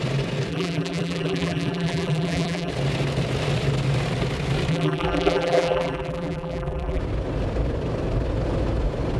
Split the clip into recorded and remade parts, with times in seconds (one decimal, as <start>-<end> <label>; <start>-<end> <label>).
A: 0.0-0.5 recorded; 0.5-2.7 remade; 2.7-4.7 recorded; 4.7-7.0 remade; 7.0-9.2 recorded